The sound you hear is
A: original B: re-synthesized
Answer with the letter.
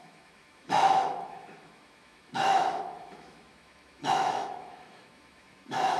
B